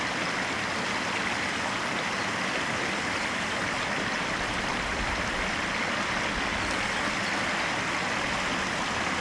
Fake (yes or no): no